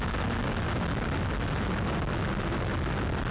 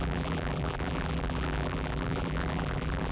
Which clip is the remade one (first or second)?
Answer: second